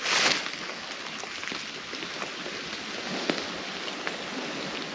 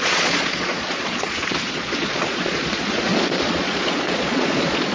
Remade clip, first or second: second